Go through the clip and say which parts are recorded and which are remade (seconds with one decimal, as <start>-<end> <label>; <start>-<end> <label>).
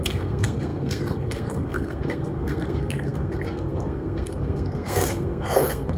0.0-6.0 remade